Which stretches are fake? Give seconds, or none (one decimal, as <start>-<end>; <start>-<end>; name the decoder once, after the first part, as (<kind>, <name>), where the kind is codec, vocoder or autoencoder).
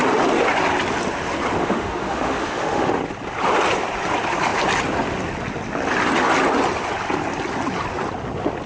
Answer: 1.6-3.0 (autoencoder, DAC-VAE)